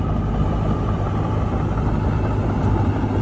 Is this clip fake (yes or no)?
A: no